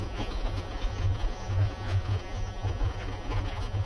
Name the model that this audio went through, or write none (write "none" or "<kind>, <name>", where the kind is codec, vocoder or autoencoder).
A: vocoder, Vocos